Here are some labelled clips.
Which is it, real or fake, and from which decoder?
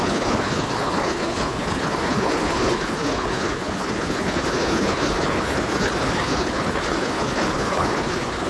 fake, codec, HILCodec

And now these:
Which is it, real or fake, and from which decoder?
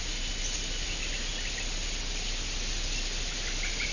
real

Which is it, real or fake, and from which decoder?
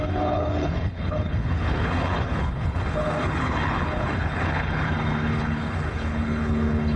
fake, codec, HILCodec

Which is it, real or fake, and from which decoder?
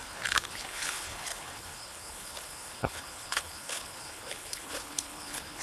fake, codec, HILCodec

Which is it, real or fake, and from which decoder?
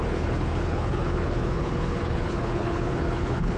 fake, codec, HILCodec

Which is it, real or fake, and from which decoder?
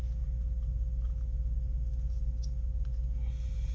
real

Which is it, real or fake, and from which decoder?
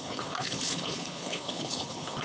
fake, codec, HILCodec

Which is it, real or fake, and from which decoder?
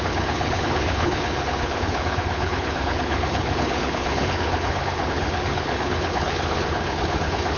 fake, codec, HILCodec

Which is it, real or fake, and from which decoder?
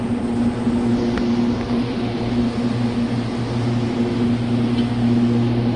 real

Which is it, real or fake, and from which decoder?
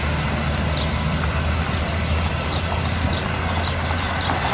real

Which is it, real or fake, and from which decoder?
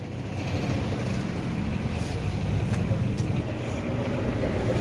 real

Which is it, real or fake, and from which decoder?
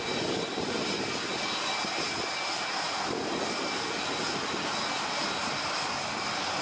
real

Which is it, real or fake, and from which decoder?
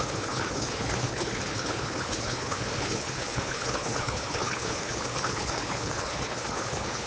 fake, codec, HILCodec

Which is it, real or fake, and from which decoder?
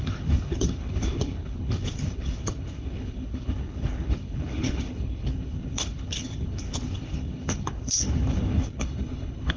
fake, codec, HILCodec